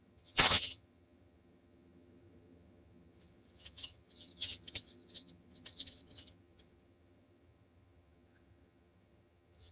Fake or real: fake